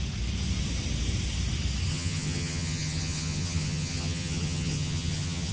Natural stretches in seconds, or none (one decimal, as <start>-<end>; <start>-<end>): 0.0-1.9